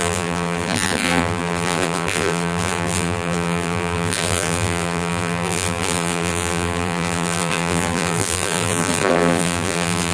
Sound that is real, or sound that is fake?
fake